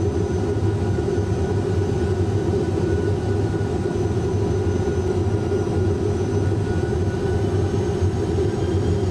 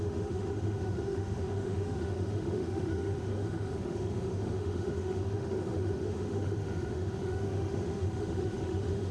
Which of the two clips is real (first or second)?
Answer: first